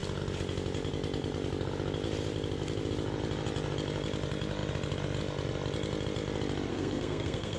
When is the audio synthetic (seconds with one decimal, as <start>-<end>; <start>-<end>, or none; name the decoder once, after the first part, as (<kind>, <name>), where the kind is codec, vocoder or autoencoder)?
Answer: 6.7-7.6 (codec, SNAC)